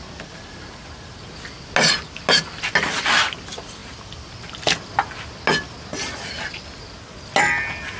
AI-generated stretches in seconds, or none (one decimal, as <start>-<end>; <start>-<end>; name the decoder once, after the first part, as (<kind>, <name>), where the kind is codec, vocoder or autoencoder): none